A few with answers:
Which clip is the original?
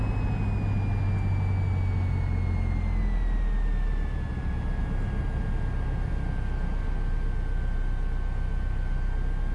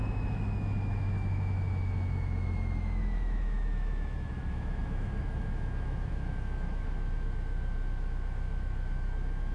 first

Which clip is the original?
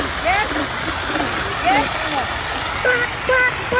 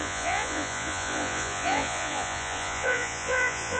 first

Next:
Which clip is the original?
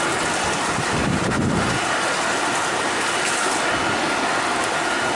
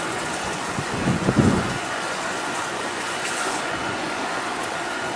first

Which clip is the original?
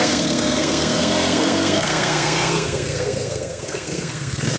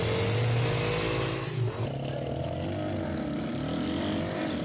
second